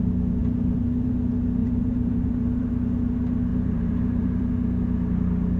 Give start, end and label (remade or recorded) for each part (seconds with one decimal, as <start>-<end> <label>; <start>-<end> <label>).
0.0-0.4 recorded; 0.4-1.1 remade; 1.1-1.6 recorded; 1.6-2.7 remade; 2.7-3.5 recorded; 3.5-4.4 remade; 4.4-5.6 recorded